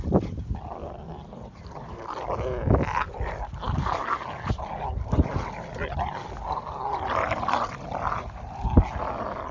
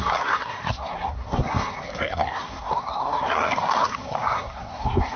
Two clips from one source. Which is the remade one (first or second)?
second